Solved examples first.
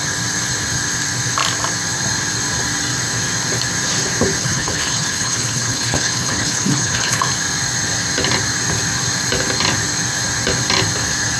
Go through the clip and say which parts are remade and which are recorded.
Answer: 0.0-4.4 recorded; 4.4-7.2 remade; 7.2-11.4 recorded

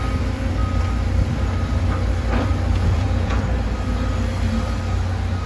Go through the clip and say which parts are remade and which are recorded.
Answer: 0.0-2.7 recorded; 2.7-3.4 remade; 3.4-5.5 recorded

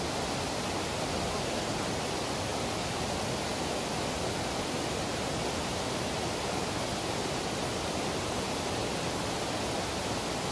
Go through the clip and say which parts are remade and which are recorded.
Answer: 0.0-10.5 recorded

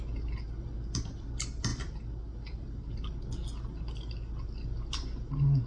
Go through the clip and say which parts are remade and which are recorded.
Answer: 0.0-1.7 recorded; 1.7-2.9 remade; 2.9-5.7 recorded

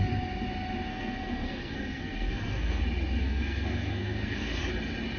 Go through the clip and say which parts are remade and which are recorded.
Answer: 0.0-0.9 recorded; 0.9-2.8 remade; 2.8-3.2 recorded; 3.2-4.6 remade; 4.6-5.2 recorded